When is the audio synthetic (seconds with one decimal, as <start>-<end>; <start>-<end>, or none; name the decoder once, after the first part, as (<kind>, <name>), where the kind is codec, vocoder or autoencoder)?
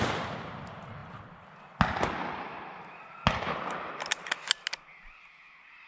none